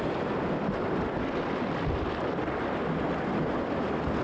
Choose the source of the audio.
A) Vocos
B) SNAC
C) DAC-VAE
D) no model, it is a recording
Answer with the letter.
D